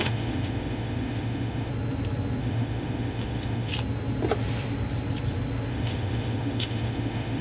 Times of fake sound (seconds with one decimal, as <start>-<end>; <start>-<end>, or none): 0.0-1.7; 2.4-3.7; 5.7-7.4